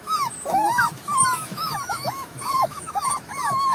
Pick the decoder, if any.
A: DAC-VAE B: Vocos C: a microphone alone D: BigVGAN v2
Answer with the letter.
A